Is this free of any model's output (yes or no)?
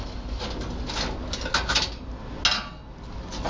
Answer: yes